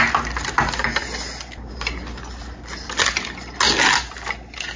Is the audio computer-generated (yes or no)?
no